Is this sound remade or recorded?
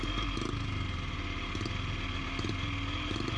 recorded